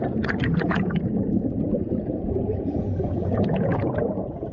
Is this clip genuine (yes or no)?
no